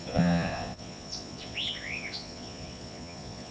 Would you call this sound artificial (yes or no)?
yes